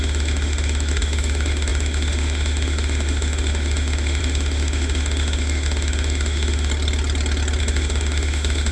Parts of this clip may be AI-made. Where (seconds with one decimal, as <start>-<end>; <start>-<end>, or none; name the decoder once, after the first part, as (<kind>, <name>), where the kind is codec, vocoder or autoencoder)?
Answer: 0.0-6.7 (autoencoder, DAC-VAE); 7.6-8.7